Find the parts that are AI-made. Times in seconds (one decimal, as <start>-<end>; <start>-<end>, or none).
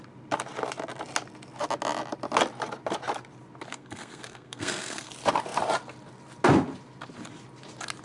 3.7-5.1